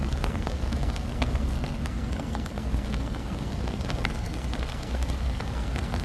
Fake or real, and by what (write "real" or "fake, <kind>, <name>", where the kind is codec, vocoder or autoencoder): fake, codec, SNAC